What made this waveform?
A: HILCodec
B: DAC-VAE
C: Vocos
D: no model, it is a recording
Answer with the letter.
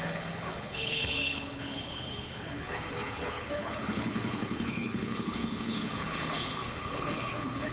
A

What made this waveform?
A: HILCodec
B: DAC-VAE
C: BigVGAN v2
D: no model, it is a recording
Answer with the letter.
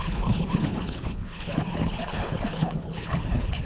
A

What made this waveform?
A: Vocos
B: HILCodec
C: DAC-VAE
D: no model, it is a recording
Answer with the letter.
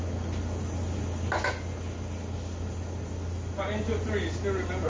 D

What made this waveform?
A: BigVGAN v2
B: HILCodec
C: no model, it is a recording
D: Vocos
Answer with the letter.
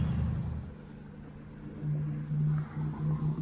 C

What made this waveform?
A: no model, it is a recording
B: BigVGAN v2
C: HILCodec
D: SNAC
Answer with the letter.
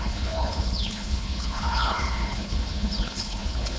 C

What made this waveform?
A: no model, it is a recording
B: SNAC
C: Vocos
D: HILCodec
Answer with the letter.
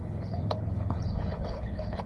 D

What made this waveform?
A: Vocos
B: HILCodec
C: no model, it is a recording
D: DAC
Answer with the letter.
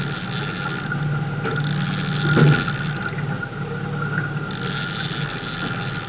C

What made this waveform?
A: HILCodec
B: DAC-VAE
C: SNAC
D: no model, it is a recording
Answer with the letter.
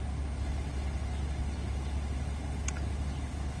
D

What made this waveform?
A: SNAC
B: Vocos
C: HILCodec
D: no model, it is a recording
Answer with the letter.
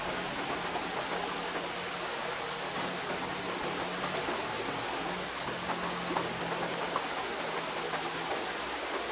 D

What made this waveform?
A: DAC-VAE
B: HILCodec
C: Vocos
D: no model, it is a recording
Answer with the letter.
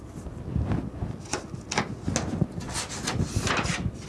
D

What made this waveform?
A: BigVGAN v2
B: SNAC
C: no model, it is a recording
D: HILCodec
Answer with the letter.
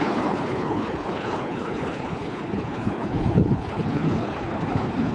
D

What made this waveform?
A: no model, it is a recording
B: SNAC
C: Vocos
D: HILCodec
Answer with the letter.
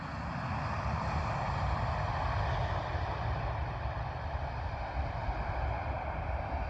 A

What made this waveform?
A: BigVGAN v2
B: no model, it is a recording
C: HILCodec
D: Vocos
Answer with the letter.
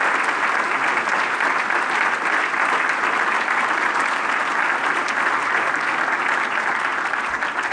B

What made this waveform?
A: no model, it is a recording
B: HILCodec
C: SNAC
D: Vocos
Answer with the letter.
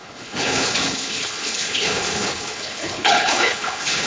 B